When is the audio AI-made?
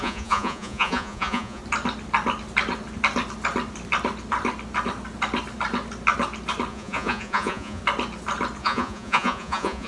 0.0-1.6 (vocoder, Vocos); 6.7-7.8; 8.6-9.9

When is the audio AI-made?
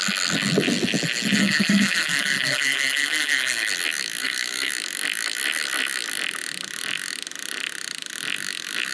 1.4-3.7 (codec, SNAC); 4.2-4.7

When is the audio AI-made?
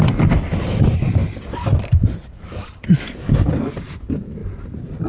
1.2-3.1 (vocoder, BigVGAN v2)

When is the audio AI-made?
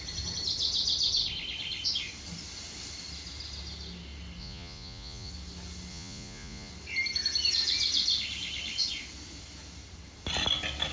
4.4-5.3 (vocoder, Vocos); 5.9-6.7